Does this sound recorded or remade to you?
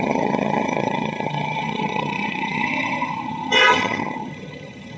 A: remade